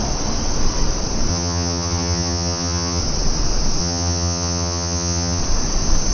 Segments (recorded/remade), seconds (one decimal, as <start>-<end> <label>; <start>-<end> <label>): 0.0-1.3 recorded; 1.3-3.0 remade; 3.0-3.8 recorded; 3.8-5.4 remade; 5.4-6.1 recorded